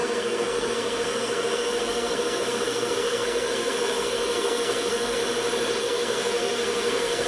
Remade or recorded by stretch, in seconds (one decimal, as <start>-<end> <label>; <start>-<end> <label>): 0.0-5.2 remade; 5.2-5.8 recorded; 5.8-7.3 remade